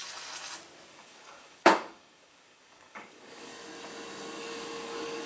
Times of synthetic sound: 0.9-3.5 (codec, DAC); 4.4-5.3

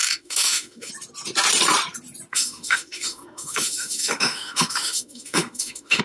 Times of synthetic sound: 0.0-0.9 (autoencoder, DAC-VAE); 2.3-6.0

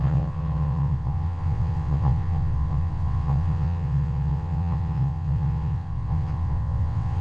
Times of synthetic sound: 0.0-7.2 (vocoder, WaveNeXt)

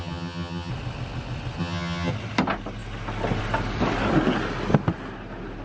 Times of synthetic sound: 0.0-0.7 (vocoder, HiFi-GAN); 1.6-2.1